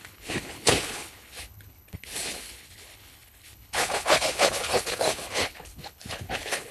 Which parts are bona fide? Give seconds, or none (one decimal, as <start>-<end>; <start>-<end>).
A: none